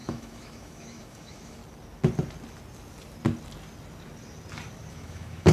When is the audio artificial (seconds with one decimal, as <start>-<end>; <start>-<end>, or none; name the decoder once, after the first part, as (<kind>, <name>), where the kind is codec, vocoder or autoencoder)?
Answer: 0.0-1.6 (autoencoder, DAC-VAE); 4.9-5.5